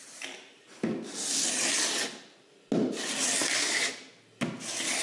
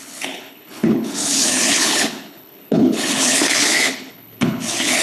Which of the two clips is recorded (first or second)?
first